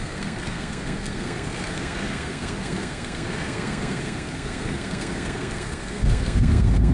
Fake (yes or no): yes